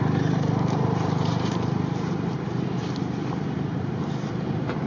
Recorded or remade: remade